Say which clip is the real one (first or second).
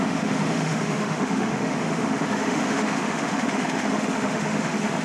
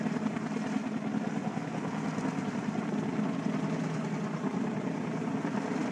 second